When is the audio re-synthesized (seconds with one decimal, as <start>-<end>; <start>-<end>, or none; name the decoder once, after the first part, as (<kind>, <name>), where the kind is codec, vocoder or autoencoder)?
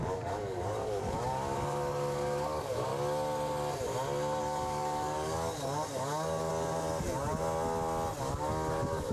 0.0-2.9 (codec, DAC); 4.4-6.5; 8.2-9.1